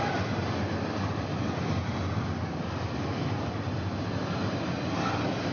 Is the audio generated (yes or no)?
no